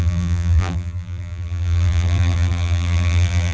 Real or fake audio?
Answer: fake